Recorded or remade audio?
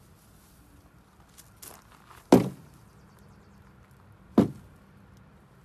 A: recorded